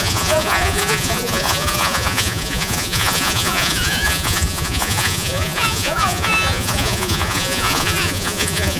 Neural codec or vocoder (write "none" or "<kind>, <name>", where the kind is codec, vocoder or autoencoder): vocoder, Vocos